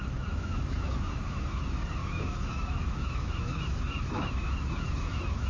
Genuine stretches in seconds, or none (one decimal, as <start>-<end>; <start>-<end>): 1.6-2.0